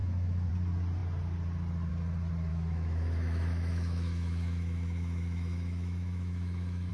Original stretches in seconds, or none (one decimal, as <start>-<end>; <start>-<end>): 0.5-2.5